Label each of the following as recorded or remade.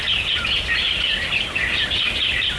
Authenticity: recorded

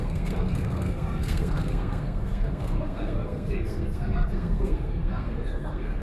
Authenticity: remade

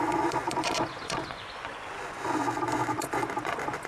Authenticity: remade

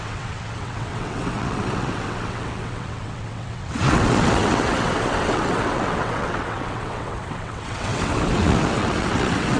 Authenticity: remade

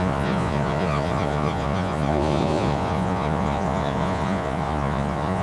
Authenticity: remade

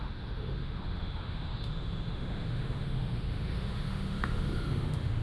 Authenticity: remade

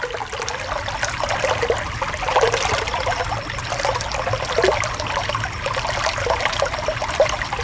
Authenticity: recorded